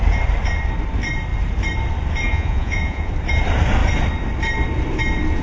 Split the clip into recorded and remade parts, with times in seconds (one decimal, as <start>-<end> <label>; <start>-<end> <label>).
0.0-2.3 recorded; 2.3-3.1 remade; 3.1-5.4 recorded